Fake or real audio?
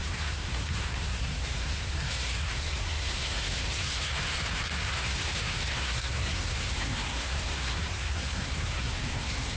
fake